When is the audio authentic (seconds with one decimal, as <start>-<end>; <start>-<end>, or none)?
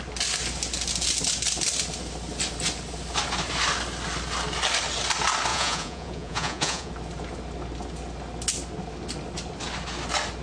0.0-5.5; 6.9-10.4